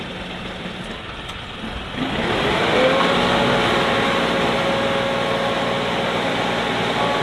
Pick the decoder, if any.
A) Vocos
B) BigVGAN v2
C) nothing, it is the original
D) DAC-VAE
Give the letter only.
C